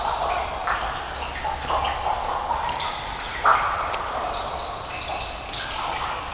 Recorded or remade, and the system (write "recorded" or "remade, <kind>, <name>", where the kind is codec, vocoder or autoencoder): recorded